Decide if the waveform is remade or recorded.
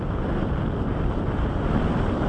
remade